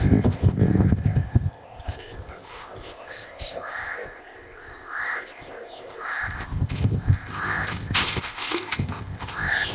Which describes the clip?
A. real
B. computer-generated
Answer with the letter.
B